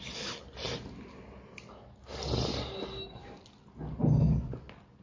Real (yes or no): yes